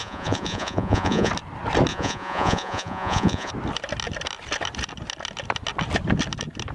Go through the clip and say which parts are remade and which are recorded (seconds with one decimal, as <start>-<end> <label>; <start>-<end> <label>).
0.0-1.3 remade; 1.3-1.9 recorded; 1.9-3.5 remade; 3.5-6.7 recorded